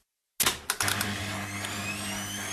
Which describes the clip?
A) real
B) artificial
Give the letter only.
A